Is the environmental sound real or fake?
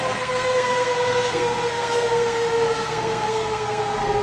fake